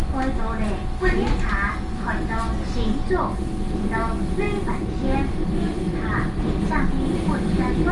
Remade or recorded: recorded